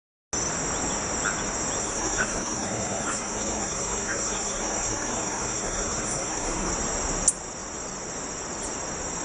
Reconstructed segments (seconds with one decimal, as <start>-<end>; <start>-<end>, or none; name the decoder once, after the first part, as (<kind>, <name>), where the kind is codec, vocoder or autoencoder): 1.8-6.7 (codec, SNAC)